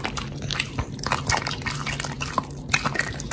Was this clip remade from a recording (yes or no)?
no